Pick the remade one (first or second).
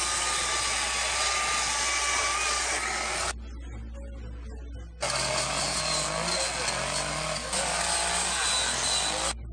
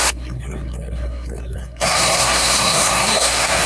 second